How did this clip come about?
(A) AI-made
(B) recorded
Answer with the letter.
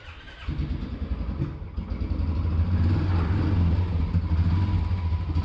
B